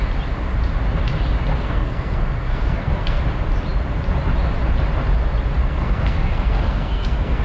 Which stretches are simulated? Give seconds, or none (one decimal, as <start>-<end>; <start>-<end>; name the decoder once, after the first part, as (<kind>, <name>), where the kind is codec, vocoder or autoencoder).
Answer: 1.5-3.2 (codec, SNAC); 5.6-7.4